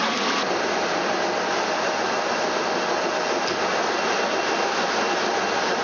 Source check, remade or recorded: recorded